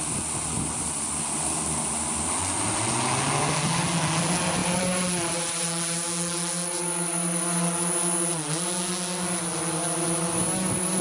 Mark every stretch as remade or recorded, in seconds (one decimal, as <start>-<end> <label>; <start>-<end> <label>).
0.0-11.0 recorded